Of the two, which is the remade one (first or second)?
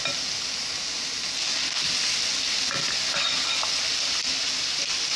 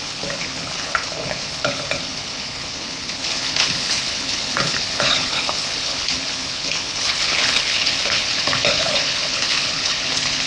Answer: second